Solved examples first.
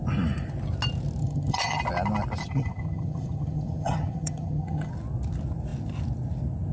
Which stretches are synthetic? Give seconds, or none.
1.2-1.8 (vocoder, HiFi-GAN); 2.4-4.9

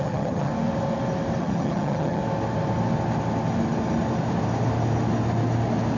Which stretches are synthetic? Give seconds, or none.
0.0-0.5 (vocoder, HiFi-GAN); 1.4-2.2

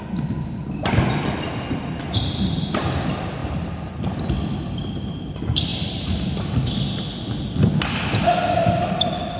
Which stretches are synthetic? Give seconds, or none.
none